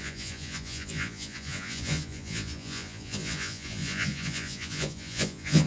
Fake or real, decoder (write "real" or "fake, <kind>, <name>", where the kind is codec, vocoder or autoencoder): fake, vocoder, Vocos